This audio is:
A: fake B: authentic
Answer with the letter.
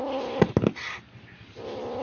B